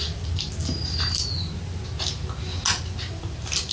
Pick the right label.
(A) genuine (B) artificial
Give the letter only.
A